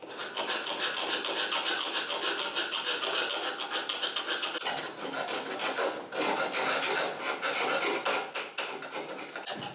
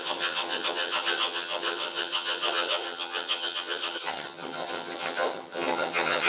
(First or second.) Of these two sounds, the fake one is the second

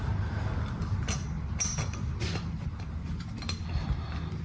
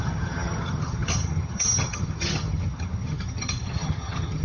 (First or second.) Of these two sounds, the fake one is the second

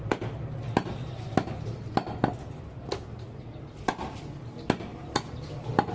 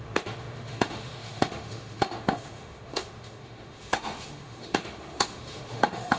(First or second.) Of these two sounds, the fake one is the second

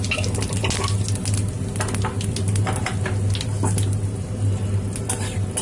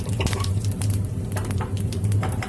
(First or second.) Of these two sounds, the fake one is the second